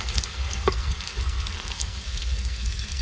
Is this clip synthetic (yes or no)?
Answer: yes